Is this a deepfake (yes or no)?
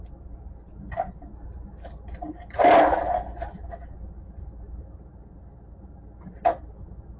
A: no